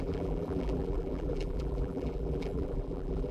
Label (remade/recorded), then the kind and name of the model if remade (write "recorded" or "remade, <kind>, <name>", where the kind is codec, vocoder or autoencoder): remade, vocoder, BigVGAN v2